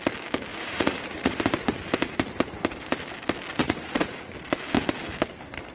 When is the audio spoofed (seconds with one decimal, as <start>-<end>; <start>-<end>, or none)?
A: 0.5-1.4; 3.6-4.3

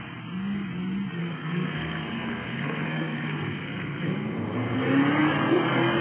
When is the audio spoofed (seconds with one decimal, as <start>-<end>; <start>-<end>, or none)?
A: 1.2-4.8

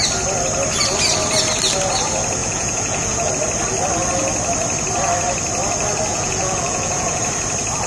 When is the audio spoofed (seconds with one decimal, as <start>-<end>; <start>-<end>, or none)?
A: 2.4-3.3; 6.1-7.2